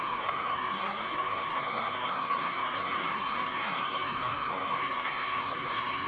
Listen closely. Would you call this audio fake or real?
fake